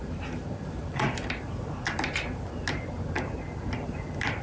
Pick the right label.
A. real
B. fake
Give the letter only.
A